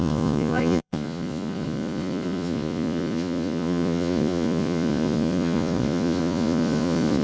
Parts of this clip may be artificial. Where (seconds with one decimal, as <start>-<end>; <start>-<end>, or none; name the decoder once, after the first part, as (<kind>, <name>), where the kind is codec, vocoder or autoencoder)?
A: 0.0-7.2 (vocoder, Vocos)